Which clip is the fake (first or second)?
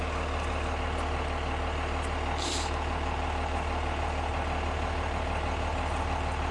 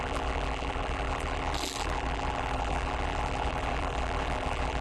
second